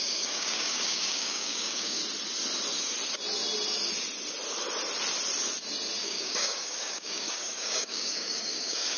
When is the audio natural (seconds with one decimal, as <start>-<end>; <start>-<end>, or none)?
2.0-6.0